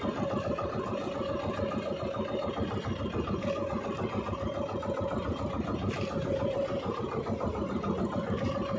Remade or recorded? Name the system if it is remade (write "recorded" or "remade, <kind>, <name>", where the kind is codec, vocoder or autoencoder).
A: recorded